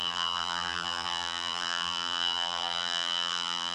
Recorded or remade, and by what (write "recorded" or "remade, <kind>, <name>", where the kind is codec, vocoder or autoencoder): remade, vocoder, BigVGAN v2